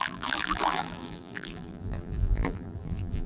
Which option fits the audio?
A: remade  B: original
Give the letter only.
A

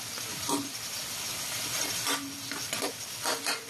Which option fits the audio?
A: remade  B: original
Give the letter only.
B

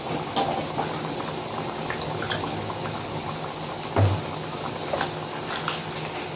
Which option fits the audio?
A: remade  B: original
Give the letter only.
B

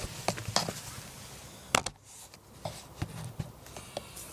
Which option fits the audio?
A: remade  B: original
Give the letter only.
B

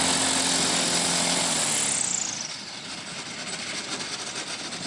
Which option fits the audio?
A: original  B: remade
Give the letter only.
A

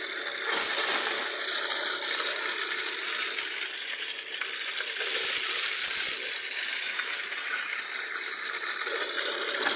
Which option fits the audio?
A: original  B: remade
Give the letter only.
B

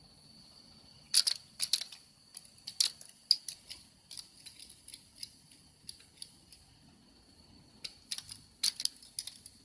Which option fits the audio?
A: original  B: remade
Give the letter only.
A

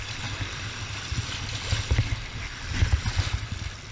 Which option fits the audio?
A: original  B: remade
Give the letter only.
A